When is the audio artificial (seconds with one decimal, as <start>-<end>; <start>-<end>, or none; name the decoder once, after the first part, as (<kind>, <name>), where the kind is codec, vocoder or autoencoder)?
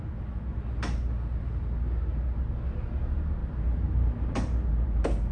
none